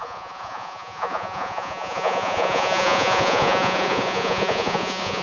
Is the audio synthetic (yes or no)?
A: yes